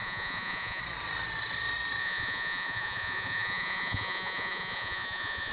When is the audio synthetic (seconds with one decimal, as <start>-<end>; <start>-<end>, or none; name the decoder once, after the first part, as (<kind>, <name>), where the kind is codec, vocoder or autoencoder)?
0.0-0.8 (vocoder, Vocos); 2.0-5.5